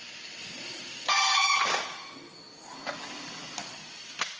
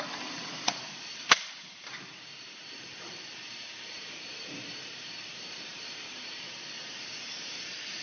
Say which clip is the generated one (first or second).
second